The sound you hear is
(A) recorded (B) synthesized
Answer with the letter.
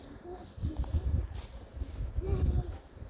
A